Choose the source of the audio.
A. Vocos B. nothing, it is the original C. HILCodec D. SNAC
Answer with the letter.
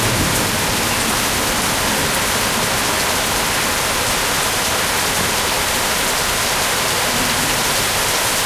B